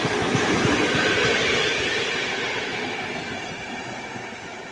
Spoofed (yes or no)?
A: no